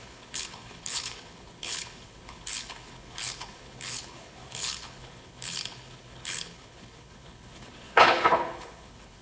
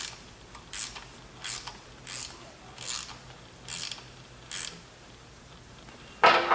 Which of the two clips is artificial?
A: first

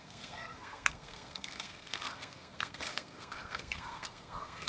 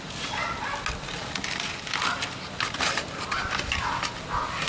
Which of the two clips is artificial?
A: first